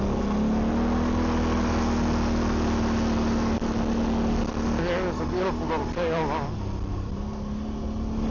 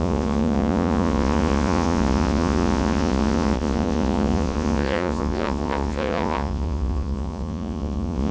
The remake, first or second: second